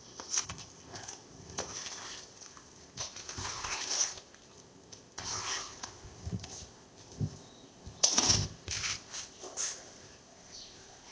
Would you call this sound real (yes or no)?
no